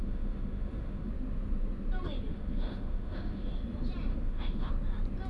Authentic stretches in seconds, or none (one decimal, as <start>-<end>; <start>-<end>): 1.1-2.3; 3.5-4.1; 4.7-5.3